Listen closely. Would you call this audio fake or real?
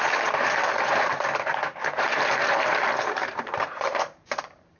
fake